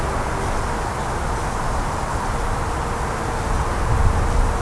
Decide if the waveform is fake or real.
real